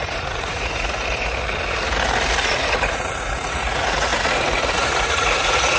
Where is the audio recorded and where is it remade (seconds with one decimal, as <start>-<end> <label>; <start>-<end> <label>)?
0.0-1.3 remade; 1.3-2.4 recorded; 2.4-5.8 remade